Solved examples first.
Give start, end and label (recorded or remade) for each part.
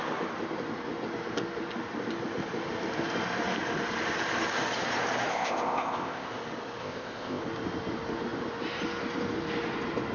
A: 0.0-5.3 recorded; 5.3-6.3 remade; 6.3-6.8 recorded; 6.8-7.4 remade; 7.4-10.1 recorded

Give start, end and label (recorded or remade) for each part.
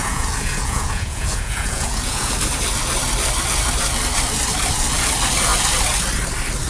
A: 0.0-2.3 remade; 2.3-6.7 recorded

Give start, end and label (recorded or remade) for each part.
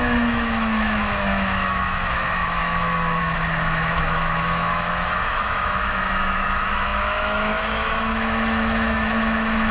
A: 0.0-9.7 remade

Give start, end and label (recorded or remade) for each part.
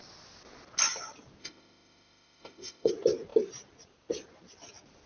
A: 0.0-1.4 recorded; 1.4-2.9 remade; 2.9-5.1 recorded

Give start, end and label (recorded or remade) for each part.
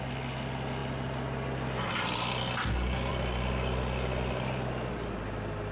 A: 0.0-5.7 recorded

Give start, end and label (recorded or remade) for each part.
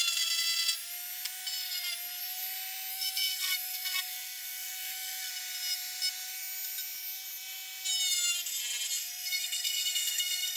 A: 0.0-2.9 recorded; 2.9-5.3 remade; 5.3-9.0 recorded; 9.0-10.6 remade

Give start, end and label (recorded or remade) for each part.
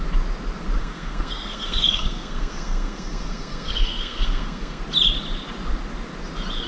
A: 0.0-0.8 recorded; 0.8-4.8 remade; 4.8-6.7 recorded